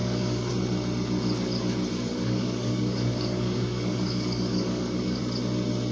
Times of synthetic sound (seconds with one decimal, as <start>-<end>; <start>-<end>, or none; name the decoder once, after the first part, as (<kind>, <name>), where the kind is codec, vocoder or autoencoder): 0.0-0.5 (codec, DAC); 2.1-5.2